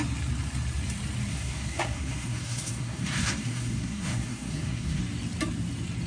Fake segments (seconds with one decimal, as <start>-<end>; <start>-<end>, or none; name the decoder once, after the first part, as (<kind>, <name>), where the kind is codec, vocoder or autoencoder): 1.3-5.0 (codec, SNAC)